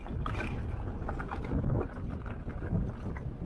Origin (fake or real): real